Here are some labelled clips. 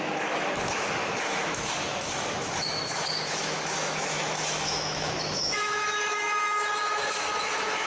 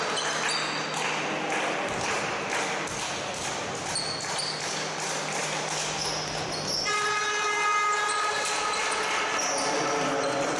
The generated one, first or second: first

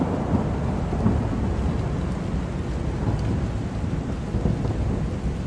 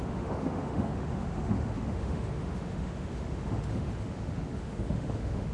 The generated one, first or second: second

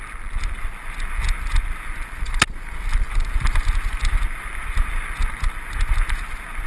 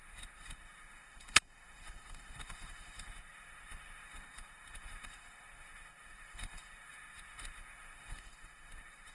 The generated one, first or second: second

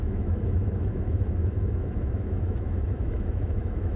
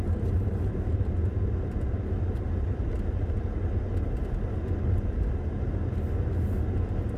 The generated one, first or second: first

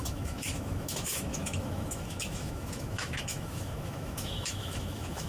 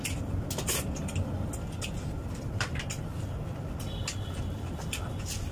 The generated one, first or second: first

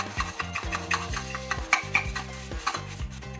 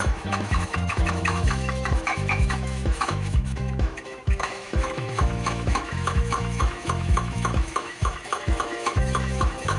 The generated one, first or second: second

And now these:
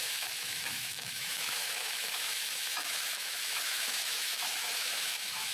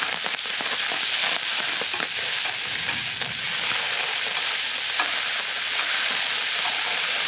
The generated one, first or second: first